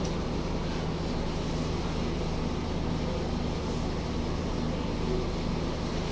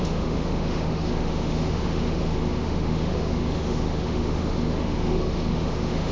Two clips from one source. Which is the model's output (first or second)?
second